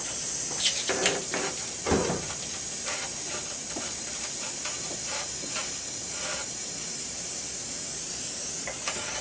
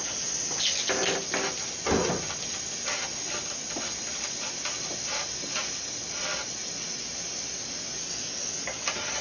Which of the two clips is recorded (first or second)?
second